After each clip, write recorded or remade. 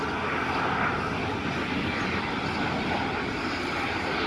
recorded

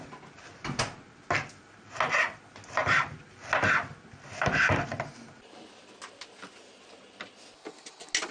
recorded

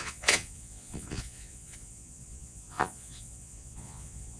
remade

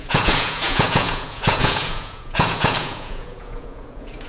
remade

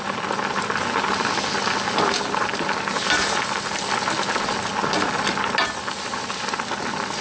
recorded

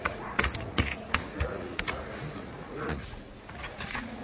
remade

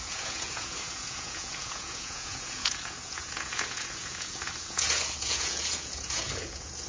remade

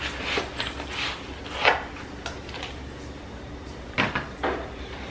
recorded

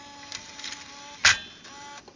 recorded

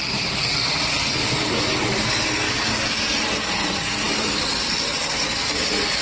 recorded